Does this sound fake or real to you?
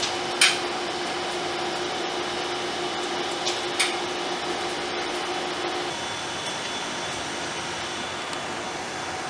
real